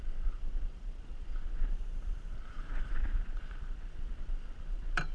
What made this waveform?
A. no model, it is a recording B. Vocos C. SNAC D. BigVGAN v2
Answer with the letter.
D